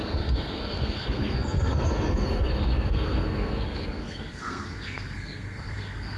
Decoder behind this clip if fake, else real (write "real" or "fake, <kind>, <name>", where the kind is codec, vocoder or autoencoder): fake, codec, SNAC